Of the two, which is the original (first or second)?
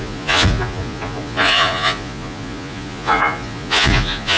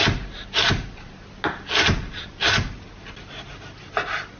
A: second